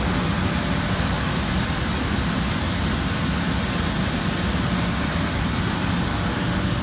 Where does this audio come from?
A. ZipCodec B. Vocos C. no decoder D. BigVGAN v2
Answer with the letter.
C